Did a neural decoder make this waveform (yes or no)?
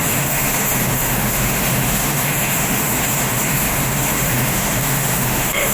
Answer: yes